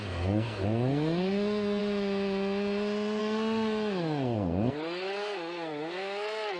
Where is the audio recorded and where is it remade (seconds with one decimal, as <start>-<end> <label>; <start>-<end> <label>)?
0.0-1.8 remade; 1.8-3.2 recorded; 3.2-6.6 remade